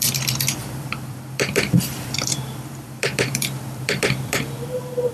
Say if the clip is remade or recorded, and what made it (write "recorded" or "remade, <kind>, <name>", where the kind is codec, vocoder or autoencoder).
remade, vocoder, BigVGAN v2